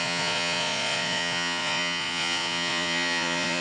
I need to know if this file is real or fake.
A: fake